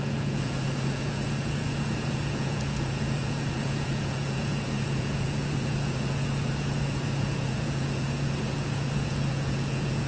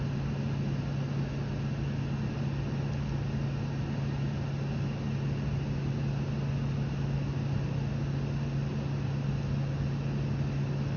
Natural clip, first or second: second